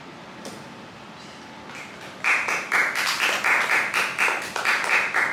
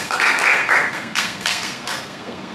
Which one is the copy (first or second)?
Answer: second